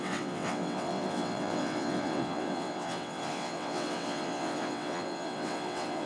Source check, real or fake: fake